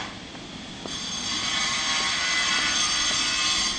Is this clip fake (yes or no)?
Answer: no